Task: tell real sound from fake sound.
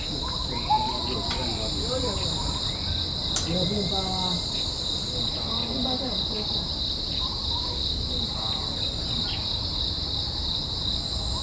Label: real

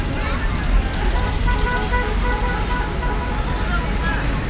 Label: real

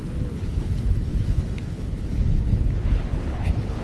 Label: fake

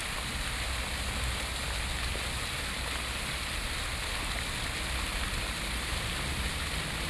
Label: real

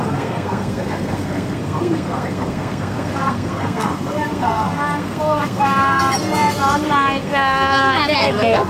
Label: fake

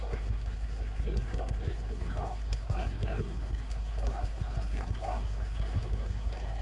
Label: fake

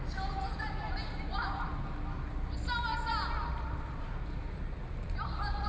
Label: real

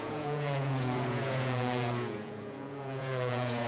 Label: fake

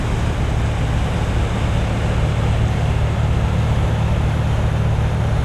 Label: real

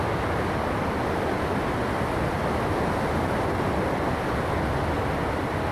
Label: real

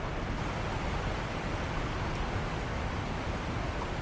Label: real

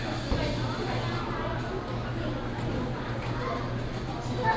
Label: real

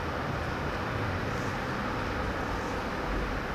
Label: real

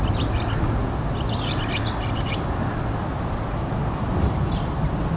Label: real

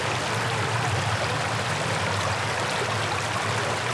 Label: real